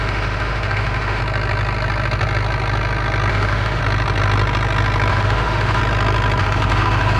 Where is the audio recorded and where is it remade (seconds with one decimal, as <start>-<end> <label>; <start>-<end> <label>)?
0.0-1.2 remade; 1.2-3.3 recorded; 3.3-3.8 remade; 3.8-5.1 recorded; 5.1-5.8 remade; 5.8-6.4 recorded; 6.4-7.2 remade